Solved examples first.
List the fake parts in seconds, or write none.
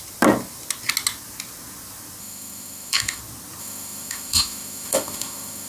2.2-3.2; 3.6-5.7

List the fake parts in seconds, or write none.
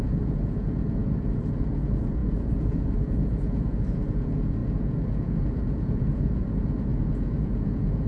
0.0-8.1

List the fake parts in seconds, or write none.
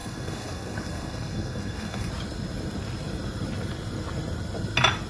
0.0-2.1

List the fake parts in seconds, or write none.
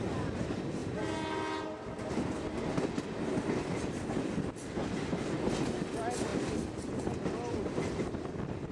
none